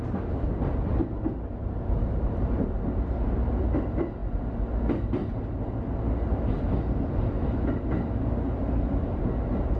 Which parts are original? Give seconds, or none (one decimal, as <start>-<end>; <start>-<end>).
0.0-9.8